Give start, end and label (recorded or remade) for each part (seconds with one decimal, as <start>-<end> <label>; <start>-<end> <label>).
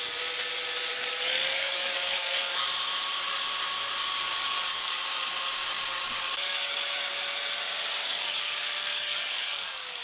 0.0-0.9 recorded; 0.9-2.7 remade; 2.7-4.0 recorded; 4.0-7.1 remade; 7.1-8.0 recorded; 8.0-10.0 remade